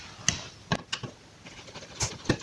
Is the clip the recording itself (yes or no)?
yes